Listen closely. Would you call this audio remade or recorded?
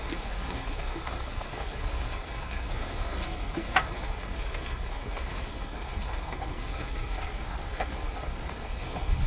remade